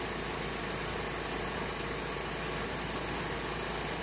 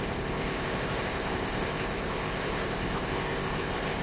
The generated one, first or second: second